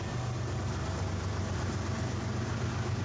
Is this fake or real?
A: real